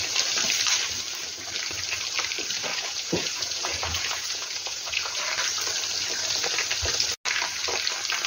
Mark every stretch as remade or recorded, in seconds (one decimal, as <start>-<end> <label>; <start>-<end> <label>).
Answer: 0.0-2.7 recorded; 2.7-5.2 remade; 5.2-8.3 recorded

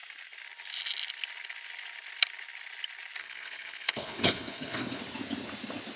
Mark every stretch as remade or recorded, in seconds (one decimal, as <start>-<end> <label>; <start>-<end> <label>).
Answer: 0.0-3.2 recorded; 3.2-5.0 remade; 5.0-6.0 recorded

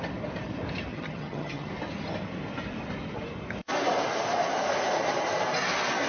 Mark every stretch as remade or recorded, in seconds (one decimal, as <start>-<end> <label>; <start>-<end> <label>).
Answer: 0.0-0.9 recorded; 0.9-1.7 remade; 1.7-6.1 recorded

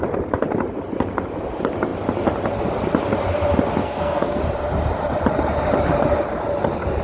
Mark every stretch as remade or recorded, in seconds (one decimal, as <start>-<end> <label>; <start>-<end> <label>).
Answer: 0.0-3.8 recorded; 3.8-4.4 remade; 4.4-7.0 recorded

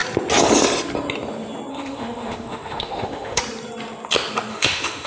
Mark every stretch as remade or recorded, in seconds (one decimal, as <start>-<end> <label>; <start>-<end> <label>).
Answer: 0.0-1.7 recorded; 1.7-3.4 remade; 3.4-4.5 recorded; 4.5-5.1 remade

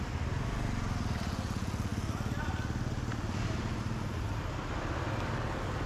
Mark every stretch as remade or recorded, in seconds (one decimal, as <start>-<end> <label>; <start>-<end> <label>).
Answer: 0.0-5.9 recorded